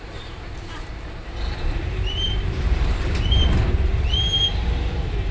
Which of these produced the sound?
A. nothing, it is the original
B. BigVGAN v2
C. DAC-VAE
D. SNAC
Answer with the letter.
B